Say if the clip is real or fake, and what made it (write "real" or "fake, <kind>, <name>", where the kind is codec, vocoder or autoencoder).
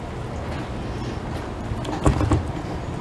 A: real